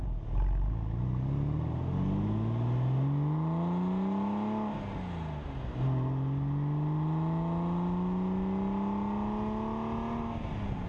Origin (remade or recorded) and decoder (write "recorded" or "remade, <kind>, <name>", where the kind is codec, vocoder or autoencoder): recorded